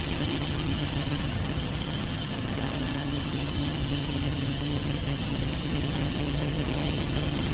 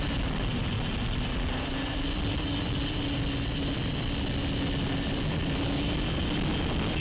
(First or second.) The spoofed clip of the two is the first